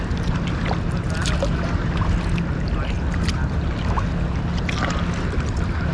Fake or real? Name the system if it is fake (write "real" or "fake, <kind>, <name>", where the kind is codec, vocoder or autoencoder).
real